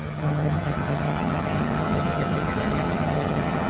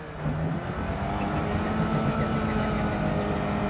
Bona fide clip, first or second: second